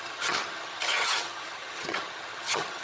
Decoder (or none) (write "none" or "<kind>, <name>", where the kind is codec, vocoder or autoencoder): vocoder, HiFi-GAN